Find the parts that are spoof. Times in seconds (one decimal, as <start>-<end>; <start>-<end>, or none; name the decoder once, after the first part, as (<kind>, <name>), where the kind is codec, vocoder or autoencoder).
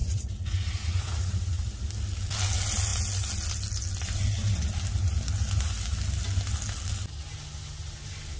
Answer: 0.0-1.8 (vocoder, Vocos)